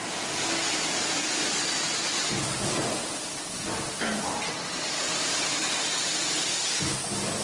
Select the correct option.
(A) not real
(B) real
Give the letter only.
B